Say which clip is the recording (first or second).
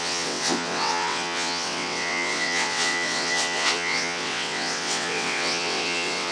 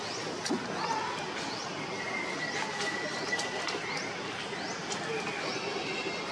second